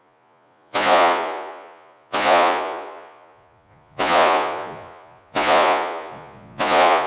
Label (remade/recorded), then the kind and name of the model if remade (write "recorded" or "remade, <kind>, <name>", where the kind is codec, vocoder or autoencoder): remade, vocoder, Vocos